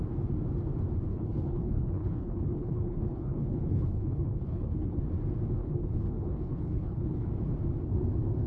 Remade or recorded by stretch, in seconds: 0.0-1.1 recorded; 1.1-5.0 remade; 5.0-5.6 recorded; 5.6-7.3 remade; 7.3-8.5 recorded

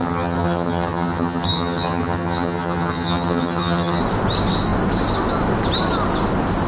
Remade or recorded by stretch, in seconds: 0.0-4.0 remade; 4.0-6.7 recorded

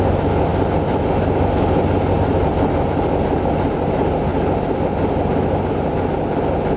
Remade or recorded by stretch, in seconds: 0.0-6.8 recorded